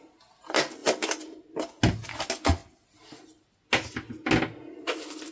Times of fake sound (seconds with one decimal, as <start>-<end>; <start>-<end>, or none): none